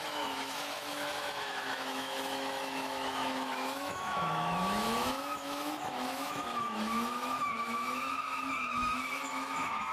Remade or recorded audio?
remade